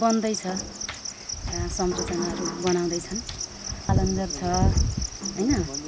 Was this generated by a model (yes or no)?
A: no